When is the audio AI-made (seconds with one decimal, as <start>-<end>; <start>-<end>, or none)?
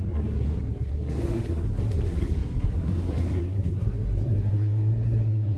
0.0-5.6